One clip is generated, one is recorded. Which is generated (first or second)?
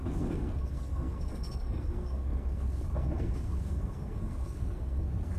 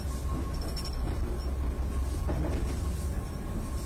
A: first